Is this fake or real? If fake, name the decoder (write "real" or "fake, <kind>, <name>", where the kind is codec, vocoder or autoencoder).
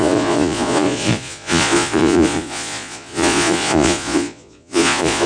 fake, vocoder, Vocos